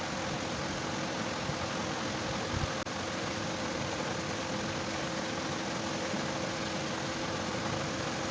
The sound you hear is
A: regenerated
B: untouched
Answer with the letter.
B